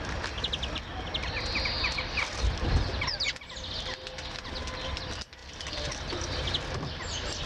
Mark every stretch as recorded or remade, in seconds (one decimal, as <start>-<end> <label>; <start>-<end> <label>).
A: 0.0-7.5 recorded